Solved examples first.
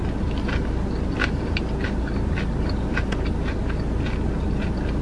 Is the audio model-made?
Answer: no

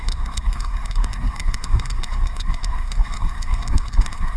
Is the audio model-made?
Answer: yes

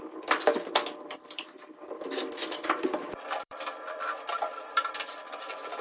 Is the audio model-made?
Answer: yes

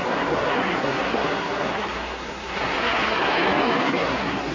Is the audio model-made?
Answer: yes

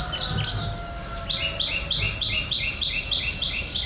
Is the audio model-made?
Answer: no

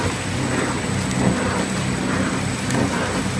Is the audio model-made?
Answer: no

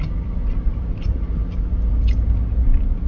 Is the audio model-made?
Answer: no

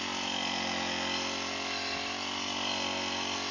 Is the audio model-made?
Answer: no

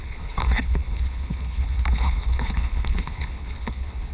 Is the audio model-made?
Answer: yes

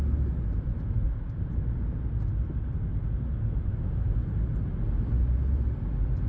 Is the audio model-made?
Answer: no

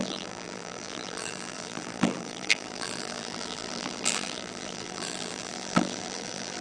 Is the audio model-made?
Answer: yes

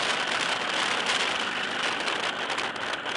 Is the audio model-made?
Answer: no